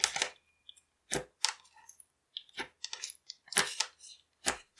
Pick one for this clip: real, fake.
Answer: real